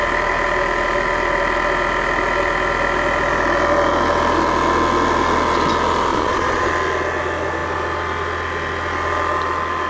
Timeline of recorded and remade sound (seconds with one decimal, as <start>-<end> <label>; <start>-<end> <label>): 0.0-6.1 recorded; 6.1-6.7 remade; 6.7-9.9 recorded